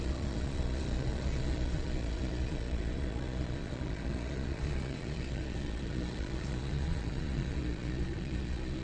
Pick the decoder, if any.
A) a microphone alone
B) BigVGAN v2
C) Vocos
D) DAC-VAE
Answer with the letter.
C